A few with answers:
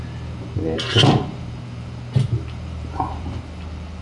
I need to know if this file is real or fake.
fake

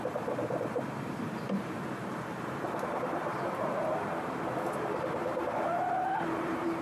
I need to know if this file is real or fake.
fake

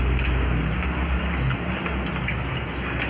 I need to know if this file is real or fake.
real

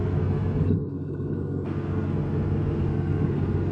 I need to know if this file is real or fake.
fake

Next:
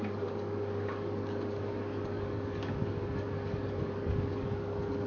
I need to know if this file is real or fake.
fake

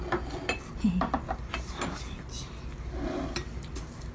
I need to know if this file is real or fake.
real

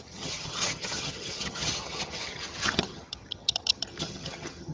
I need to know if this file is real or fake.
fake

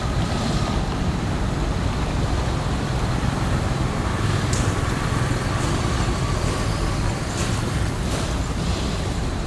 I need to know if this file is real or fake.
fake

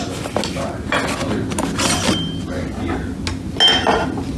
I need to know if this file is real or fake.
real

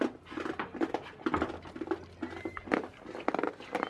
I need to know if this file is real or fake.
real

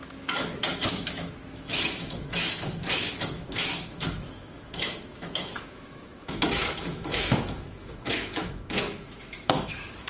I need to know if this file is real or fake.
fake